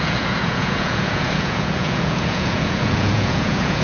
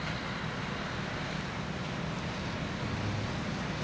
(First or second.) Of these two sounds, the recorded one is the second